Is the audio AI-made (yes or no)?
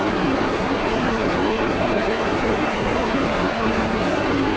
yes